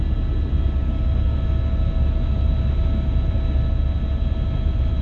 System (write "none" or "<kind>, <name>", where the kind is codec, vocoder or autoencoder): none